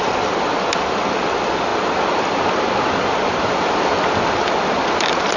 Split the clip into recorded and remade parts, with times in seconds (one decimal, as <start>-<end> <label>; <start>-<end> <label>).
0.0-5.4 recorded